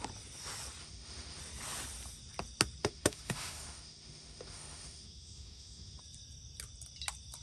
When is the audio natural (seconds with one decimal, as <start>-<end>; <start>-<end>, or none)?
0.0-0.8; 1.4-2.8; 6.0-7.4